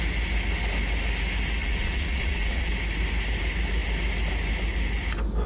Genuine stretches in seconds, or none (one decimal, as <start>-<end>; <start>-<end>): 0.0-1.6; 2.7-5.5